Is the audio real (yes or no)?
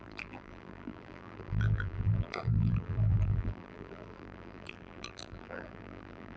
no